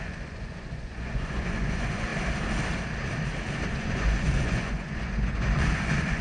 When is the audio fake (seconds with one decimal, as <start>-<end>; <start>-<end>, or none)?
0.0-2.1; 3.7-6.2